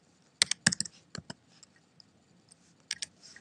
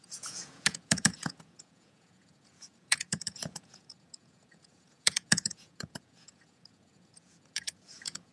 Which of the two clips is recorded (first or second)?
first